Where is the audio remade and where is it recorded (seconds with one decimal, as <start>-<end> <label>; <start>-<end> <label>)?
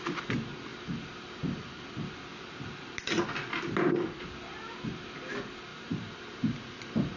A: 0.0-0.7 recorded; 0.7-1.8 remade; 1.8-2.3 recorded; 2.3-3.0 remade; 3.0-5.7 recorded; 5.7-7.2 remade